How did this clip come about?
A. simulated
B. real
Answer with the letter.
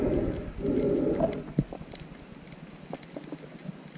B